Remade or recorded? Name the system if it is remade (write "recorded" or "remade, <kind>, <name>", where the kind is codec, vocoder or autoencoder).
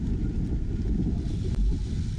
recorded